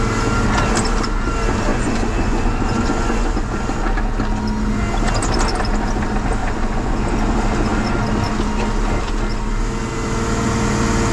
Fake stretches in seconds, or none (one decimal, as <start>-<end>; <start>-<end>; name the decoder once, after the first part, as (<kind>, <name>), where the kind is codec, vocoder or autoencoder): 1.7-3.5 (vocoder, Vocos); 6.4-7.0